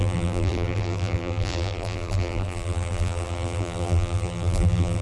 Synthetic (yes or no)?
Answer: yes